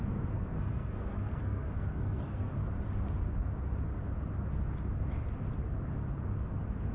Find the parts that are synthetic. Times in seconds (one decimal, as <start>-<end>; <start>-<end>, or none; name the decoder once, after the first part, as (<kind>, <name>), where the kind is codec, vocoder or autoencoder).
0.0-2.6 (codec, SNAC)